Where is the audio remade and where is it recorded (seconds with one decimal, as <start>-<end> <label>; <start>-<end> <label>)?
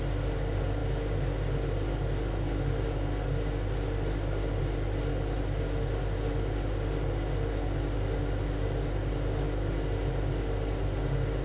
0.0-11.4 recorded